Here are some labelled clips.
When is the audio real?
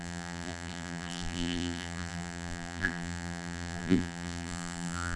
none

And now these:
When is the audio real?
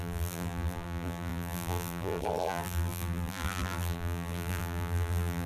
none